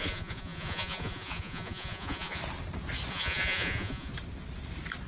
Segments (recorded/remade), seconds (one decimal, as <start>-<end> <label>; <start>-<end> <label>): 0.0-2.4 remade; 2.4-3.1 recorded; 3.1-4.1 remade; 4.1-5.1 recorded